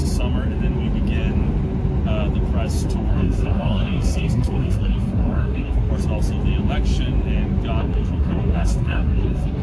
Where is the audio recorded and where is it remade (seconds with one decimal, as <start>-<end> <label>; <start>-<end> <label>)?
0.0-3.1 recorded; 3.1-5.9 remade; 5.9-7.8 recorded; 7.8-9.6 remade